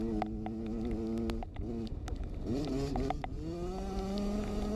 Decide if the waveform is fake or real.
real